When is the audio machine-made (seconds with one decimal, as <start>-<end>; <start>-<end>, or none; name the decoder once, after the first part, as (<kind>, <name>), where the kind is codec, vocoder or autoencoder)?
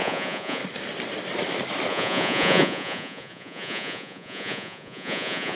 0.0-0.6 (vocoder, Vocos); 1.9-5.6